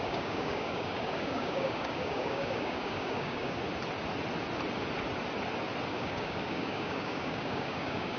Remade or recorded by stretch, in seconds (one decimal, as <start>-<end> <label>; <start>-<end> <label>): 0.0-3.6 remade; 3.6-5.9 recorded; 5.9-8.2 remade